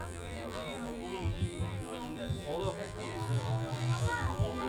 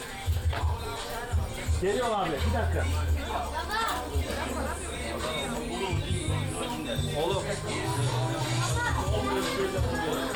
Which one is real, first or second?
second